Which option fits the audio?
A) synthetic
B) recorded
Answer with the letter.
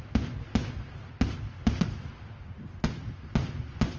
B